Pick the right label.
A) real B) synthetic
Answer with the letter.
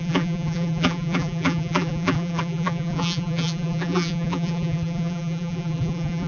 B